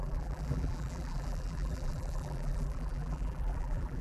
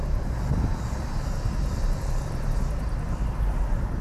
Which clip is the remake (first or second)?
first